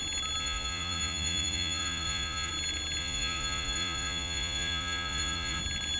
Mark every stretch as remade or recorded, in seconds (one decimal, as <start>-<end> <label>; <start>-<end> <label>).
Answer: 0.0-0.4 recorded; 0.4-2.5 remade; 2.5-3.0 recorded; 3.0-5.6 remade; 5.6-6.0 recorded